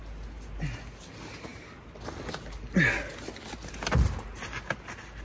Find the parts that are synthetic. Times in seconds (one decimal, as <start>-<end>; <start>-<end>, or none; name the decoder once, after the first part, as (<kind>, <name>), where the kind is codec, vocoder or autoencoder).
none